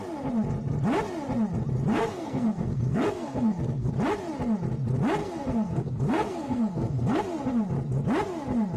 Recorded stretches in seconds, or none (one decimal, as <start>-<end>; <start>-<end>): 0.0-1.9; 3.9-5.2; 7.2-8.8